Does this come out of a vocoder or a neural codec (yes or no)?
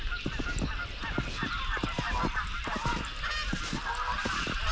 no